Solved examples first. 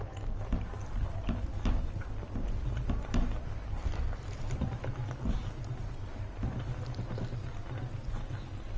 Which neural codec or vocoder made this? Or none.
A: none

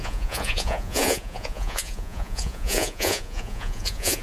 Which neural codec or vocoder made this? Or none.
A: vocoder, Vocos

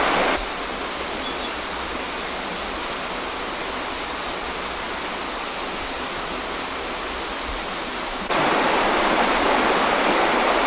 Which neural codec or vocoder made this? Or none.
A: none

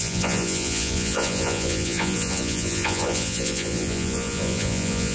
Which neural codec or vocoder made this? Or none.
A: vocoder, Vocos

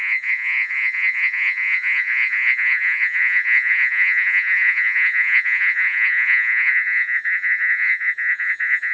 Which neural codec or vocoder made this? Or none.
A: vocoder, Vocos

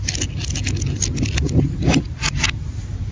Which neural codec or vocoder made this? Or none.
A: none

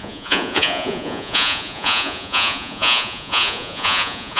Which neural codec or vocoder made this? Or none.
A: vocoder, Vocos